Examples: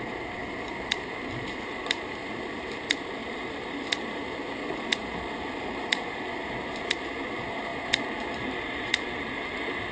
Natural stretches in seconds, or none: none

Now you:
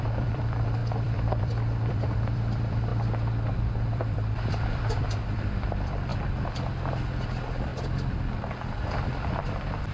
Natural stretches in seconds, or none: 2.9-3.5; 6.1-7.3; 7.7-8.2

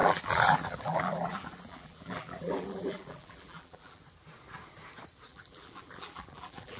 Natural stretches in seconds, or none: 4.0-5.3

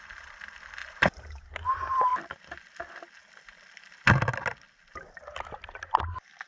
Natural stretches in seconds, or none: 0.0-0.8; 1.7-6.5

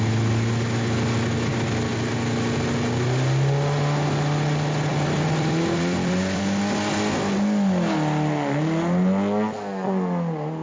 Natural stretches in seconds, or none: 0.0-4.9; 6.4-10.6

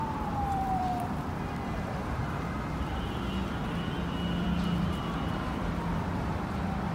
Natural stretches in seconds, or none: 2.2-6.1